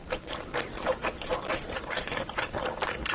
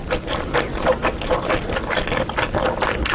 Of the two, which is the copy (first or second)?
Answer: first